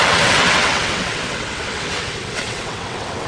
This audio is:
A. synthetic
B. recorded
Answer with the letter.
A